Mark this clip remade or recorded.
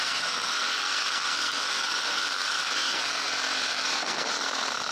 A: remade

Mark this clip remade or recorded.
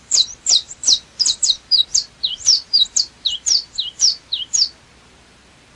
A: remade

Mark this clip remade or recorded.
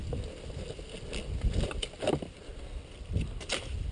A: recorded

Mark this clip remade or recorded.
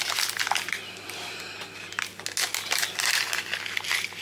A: recorded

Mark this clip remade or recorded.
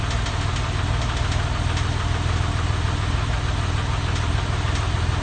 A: recorded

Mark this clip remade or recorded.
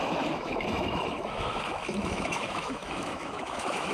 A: remade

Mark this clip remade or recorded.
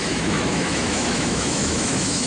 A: remade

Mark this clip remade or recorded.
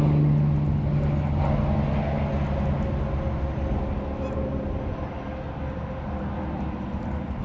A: recorded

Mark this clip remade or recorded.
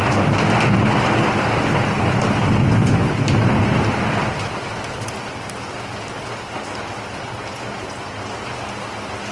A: recorded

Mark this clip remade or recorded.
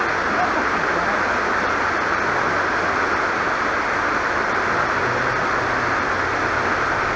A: recorded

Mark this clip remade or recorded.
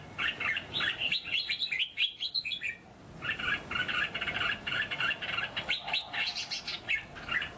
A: recorded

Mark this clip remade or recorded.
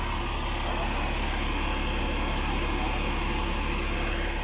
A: recorded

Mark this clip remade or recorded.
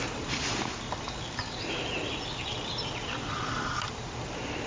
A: recorded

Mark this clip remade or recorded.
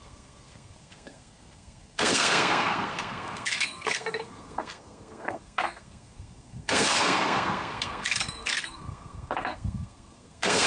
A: remade